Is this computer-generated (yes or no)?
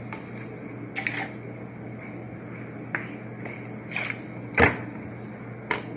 no